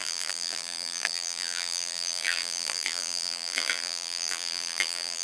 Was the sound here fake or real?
fake